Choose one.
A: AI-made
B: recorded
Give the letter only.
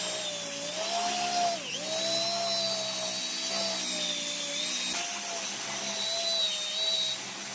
B